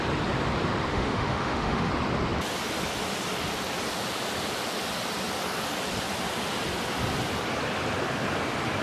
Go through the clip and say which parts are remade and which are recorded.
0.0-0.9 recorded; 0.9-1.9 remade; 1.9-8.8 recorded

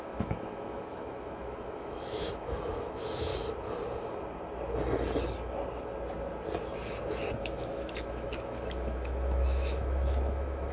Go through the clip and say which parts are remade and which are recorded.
0.0-3.3 remade; 3.3-7.4 recorded; 7.4-10.7 remade

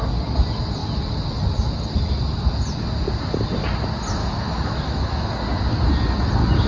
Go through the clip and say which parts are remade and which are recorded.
0.0-4.2 recorded; 4.2-5.3 remade; 5.3-6.7 recorded